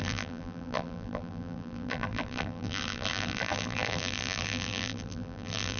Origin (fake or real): fake